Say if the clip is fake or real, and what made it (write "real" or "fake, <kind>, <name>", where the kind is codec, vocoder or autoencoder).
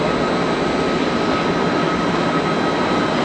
real